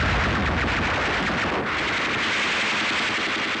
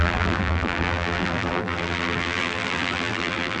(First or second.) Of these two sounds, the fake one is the second